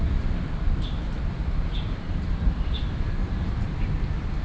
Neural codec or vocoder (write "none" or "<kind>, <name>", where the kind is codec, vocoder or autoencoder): vocoder, BigVGAN v2